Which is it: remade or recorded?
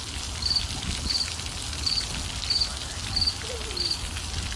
recorded